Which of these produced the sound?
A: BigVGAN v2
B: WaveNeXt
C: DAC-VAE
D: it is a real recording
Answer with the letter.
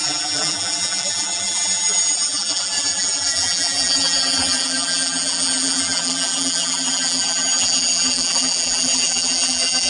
A